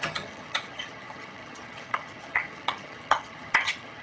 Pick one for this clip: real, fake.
fake